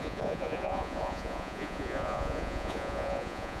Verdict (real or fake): fake